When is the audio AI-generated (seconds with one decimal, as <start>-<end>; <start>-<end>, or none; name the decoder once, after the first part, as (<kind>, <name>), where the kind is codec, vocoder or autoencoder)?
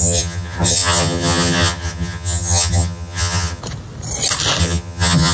0.0-3.6 (vocoder, HiFi-GAN); 4.6-5.3